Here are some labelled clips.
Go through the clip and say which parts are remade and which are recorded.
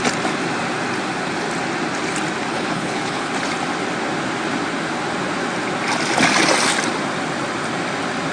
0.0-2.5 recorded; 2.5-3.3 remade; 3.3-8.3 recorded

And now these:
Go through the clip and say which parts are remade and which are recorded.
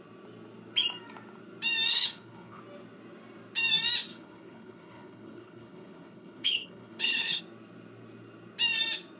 0.0-1.9 recorded; 1.9-2.6 remade; 2.6-4.1 recorded; 4.1-7.4 remade; 7.4-9.2 recorded